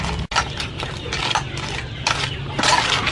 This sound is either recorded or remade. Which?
recorded